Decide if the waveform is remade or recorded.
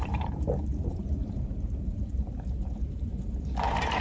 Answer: remade